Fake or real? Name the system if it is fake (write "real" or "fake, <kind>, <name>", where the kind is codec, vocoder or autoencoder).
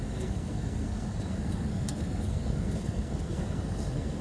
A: fake, codec, SNAC